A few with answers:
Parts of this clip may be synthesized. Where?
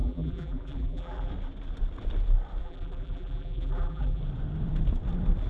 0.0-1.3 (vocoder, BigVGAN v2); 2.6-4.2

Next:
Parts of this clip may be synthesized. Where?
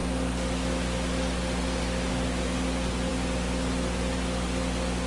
none